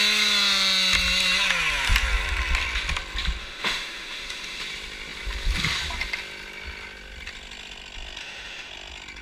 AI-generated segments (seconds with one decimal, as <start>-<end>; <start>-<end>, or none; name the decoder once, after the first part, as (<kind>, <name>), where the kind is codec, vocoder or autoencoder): 3.4-4.6 (autoencoder, DAC-VAE); 8.2-8.7